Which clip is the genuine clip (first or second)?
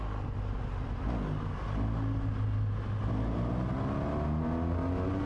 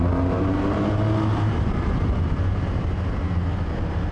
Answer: first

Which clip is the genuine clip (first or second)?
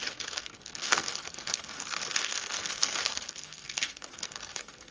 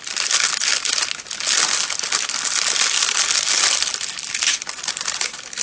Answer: second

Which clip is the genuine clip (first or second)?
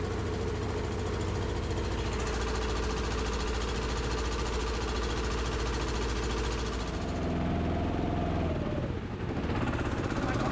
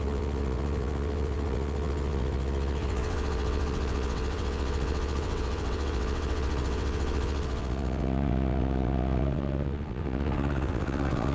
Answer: first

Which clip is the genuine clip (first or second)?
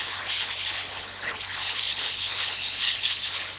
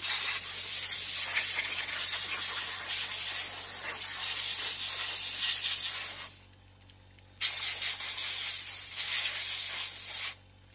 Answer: second